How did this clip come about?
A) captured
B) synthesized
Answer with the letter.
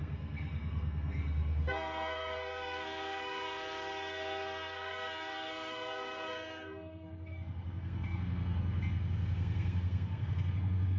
B